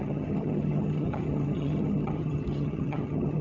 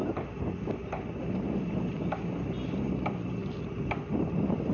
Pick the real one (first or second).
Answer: second